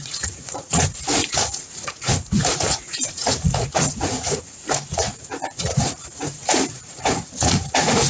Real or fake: fake